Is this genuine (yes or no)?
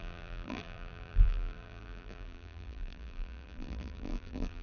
no